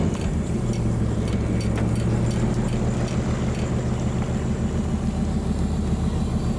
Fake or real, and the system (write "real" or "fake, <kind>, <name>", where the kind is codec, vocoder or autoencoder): real